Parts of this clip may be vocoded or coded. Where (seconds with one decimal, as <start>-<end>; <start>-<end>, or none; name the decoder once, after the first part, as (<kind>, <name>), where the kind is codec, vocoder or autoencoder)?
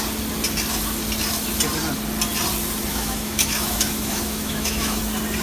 2.9-5.0 (autoencoder, DAC-VAE)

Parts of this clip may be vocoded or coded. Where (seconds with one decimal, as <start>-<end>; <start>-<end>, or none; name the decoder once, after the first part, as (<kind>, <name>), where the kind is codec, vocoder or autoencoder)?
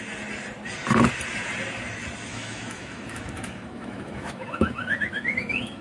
2.3-5.8 (autoencoder, DAC-VAE)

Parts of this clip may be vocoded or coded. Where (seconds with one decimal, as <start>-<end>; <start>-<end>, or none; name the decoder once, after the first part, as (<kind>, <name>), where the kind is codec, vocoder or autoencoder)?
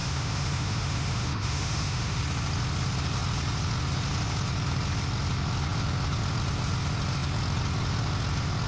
0.0-2.2 (autoencoder, DAC-VAE)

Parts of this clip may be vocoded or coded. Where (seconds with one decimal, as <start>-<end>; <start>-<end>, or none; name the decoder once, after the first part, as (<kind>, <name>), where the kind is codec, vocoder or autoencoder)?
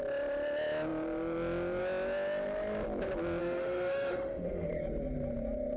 3.4-4.7 (autoencoder, DAC-VAE)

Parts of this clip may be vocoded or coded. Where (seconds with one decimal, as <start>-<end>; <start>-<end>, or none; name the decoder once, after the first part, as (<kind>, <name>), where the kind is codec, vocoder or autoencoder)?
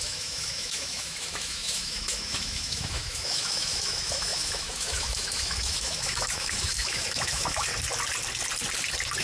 0.0-7.7 (autoencoder, DAC-VAE)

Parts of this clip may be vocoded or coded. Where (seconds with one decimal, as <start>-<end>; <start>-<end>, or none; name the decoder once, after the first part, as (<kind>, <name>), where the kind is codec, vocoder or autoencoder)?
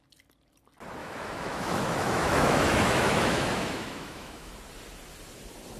1.0-4.5 (autoencoder, DAC-VAE)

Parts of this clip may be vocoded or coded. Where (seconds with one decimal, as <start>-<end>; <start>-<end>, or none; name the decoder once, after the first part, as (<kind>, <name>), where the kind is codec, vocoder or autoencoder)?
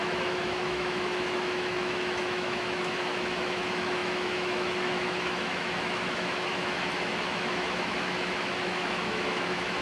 0.0-9.8 (autoencoder, DAC-VAE)